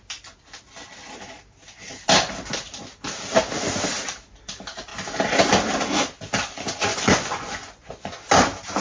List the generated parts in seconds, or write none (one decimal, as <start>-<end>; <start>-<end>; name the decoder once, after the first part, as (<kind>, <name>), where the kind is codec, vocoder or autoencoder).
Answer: 6.9-8.2 (vocoder, Vocos)